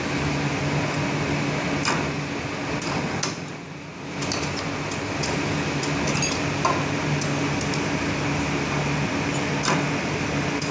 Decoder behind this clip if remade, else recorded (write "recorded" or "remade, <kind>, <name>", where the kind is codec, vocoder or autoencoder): recorded